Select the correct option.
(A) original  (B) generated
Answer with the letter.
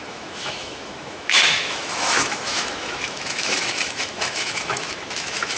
B